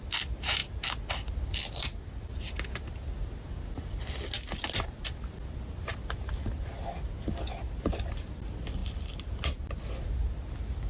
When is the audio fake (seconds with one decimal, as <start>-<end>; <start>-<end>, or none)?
none